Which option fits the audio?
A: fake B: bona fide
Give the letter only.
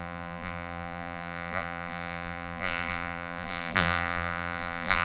A